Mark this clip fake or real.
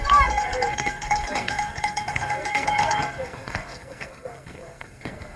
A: fake